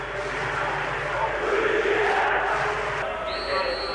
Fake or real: real